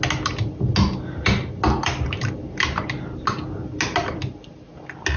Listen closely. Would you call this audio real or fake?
real